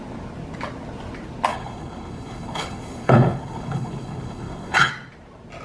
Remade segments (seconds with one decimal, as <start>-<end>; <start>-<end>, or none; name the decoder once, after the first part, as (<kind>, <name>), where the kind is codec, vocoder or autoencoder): 1.5-4.9 (codec, HILCodec)